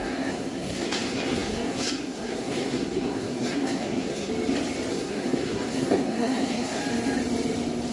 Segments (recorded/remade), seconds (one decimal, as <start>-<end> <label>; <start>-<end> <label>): 0.0-4.3 remade; 4.3-4.9 recorded; 4.9-6.8 remade; 6.8-7.9 recorded